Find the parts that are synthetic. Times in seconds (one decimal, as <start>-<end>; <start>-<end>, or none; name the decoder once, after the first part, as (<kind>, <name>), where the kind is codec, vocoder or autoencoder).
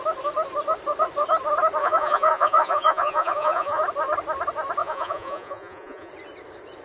1.8-3.8 (vocoder, Vocos); 4.8-6.1